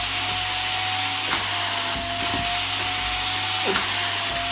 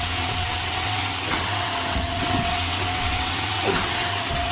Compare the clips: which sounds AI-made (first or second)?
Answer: second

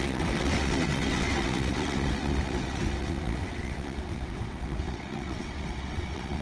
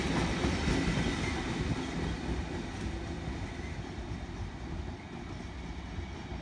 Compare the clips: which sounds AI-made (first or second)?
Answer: first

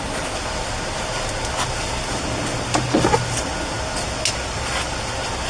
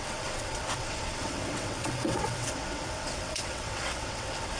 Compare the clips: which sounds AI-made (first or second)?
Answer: second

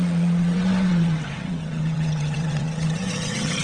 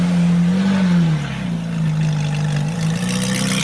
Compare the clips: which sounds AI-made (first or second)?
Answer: first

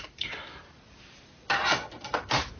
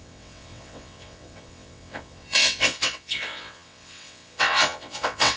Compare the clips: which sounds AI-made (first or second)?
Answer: second